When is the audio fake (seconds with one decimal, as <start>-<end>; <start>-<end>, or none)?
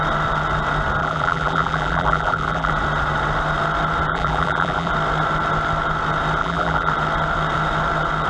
1.0-2.7; 4.1-4.9; 6.4-6.9